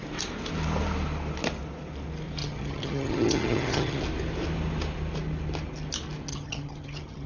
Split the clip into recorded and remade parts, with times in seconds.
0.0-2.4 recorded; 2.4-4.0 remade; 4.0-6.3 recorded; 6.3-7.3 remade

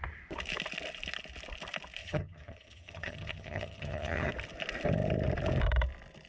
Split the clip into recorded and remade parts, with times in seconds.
0.0-2.0 recorded; 2.0-4.3 remade; 4.3-6.3 recorded

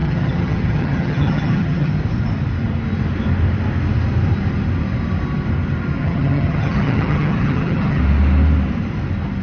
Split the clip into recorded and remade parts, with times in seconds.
0.0-1.9 remade; 1.9-6.0 recorded; 6.0-8.0 remade; 8.0-9.4 recorded

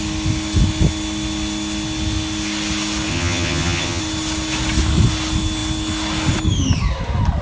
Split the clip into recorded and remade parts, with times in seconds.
0.0-3.1 recorded; 3.1-4.0 remade; 4.0-7.4 recorded

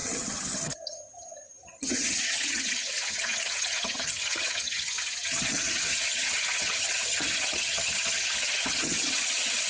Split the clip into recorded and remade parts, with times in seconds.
0.0-9.7 remade

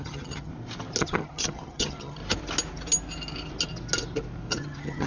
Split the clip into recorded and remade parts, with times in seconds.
0.0-0.5 remade; 0.5-1.0 recorded; 1.0-2.2 remade; 2.2-4.5 recorded; 4.5-5.1 remade